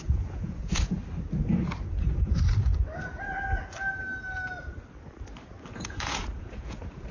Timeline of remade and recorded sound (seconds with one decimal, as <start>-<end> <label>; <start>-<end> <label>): 0.0-1.0 remade; 1.0-2.0 recorded; 2.0-2.7 remade; 2.7-5.7 recorded; 5.7-7.1 remade